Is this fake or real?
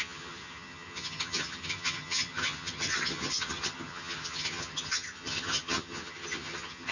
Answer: fake